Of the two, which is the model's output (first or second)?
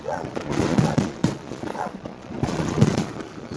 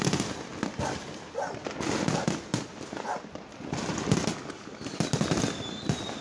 first